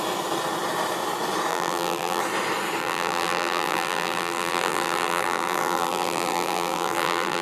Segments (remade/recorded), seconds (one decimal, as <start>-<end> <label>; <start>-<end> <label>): 0.0-1.5 recorded; 1.5-2.2 remade; 2.2-2.8 recorded; 2.8-7.4 remade